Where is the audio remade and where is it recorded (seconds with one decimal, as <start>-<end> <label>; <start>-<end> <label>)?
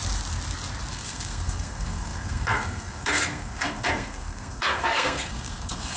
0.0-0.9 recorded; 0.9-6.0 remade